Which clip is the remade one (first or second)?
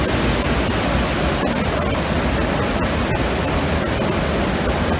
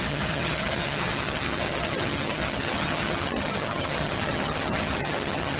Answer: second